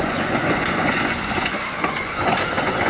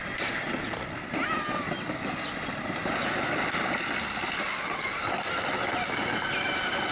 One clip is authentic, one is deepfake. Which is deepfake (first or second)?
first